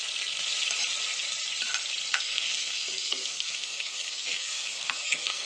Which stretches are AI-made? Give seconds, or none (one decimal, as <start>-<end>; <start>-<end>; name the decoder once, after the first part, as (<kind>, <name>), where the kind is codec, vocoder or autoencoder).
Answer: 2.1-5.5 (codec, SNAC)